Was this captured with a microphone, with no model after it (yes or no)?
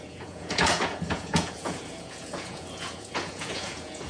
no